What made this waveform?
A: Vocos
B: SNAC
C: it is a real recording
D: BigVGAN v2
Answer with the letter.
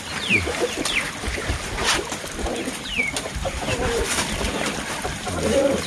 C